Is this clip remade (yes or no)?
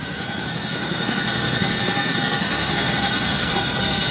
yes